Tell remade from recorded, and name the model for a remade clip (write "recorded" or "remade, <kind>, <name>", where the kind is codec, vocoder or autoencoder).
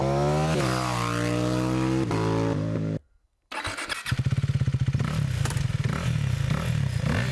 recorded